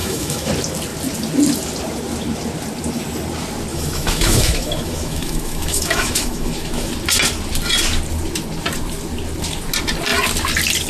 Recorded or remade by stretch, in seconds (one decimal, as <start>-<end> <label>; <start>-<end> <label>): 0.0-0.5 remade; 0.5-3.7 recorded; 3.7-6.9 remade; 6.9-10.9 recorded